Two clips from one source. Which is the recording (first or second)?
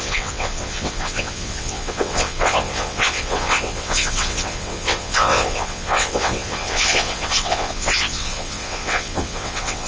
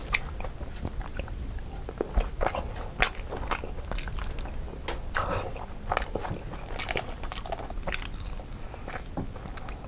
second